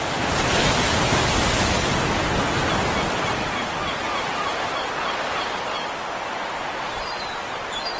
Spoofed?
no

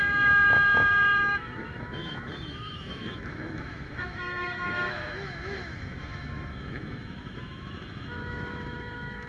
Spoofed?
yes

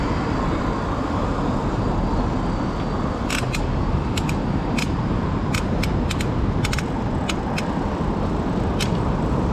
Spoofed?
no